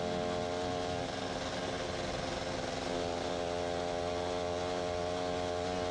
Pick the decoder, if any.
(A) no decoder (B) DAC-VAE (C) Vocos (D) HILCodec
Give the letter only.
A